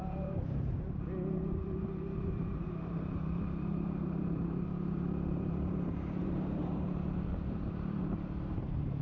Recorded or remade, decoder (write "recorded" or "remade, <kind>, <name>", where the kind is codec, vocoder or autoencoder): remade, vocoder, BigVGAN v2